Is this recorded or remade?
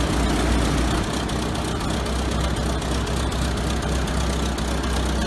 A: recorded